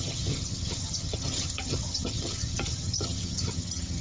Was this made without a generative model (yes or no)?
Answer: no